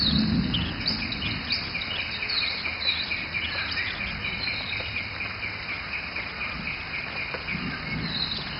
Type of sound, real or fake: real